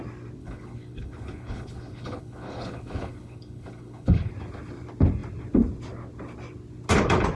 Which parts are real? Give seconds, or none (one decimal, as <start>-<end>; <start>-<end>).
0.0-0.4; 4.3-7.3